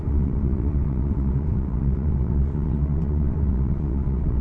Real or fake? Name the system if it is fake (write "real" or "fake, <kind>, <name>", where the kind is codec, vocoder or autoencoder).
fake, vocoder, WaveNeXt